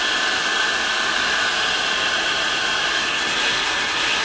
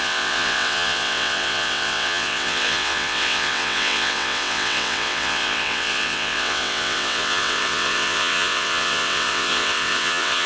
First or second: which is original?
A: first